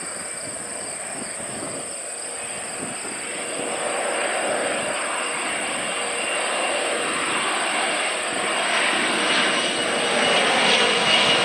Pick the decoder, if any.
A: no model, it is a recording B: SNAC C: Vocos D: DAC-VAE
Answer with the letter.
A